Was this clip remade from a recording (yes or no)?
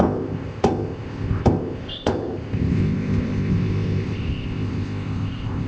yes